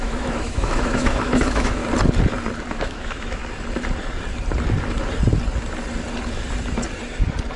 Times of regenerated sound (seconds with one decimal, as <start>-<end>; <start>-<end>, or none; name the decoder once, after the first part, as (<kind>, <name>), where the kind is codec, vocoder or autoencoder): 0.0-1.8 (autoencoder, DAC-VAE); 2.7-3.4

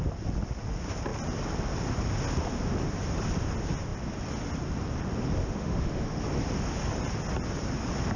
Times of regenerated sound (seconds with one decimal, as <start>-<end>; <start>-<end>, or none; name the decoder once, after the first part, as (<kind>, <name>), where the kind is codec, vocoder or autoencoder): 5.4-6.2 (autoencoder, DAC-VAE)